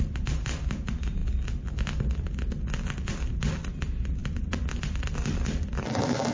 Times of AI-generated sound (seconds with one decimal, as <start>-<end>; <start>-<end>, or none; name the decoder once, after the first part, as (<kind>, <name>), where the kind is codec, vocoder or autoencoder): none